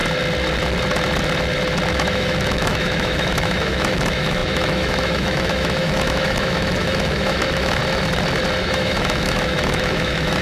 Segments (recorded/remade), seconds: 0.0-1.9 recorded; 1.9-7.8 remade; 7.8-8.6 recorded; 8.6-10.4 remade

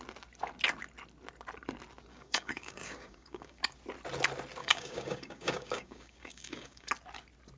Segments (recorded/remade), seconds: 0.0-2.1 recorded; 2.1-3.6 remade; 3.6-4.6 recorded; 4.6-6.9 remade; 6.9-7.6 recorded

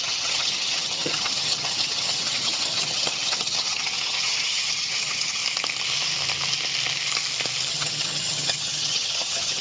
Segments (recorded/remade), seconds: 0.0-5.4 remade; 5.4-7.7 recorded; 7.7-9.6 remade

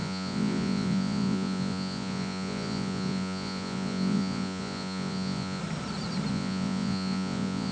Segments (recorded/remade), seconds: 0.0-5.6 remade; 5.6-6.3 recorded; 6.3-7.7 remade